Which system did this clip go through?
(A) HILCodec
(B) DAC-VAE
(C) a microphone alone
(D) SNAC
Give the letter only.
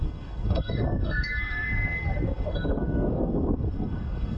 D